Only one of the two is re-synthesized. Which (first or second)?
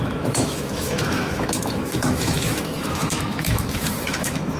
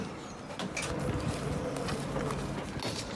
first